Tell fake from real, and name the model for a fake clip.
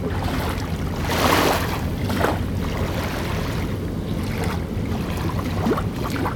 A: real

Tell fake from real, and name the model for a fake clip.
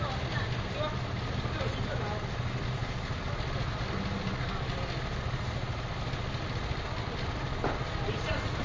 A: real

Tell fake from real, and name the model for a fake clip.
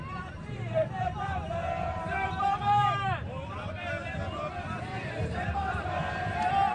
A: fake, vocoder, BigVGAN v2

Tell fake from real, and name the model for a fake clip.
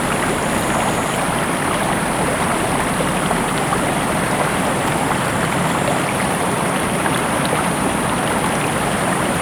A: fake, vocoder, BigVGAN v2